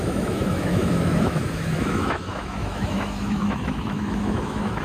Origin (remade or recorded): remade